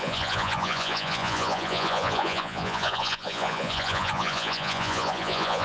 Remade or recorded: remade